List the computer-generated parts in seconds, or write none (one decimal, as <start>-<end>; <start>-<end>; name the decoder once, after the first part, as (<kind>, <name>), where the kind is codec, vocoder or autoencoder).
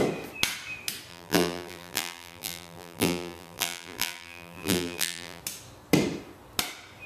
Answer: 1.1-5.4 (vocoder, BigVGAN v2)